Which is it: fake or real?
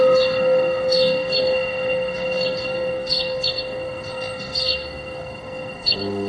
fake